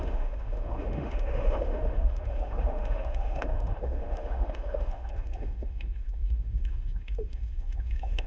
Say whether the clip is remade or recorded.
remade